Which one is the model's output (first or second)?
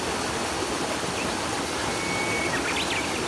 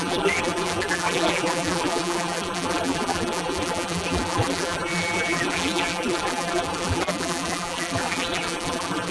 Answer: second